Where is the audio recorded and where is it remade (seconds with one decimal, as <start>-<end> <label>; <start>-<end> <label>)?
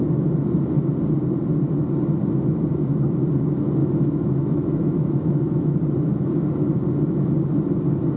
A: 0.0-3.8 recorded; 3.8-5.8 remade; 5.8-8.2 recorded